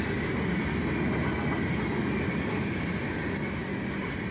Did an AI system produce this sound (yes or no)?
no